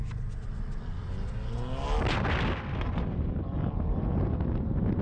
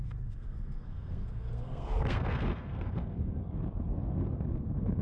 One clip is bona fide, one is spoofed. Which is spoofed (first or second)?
second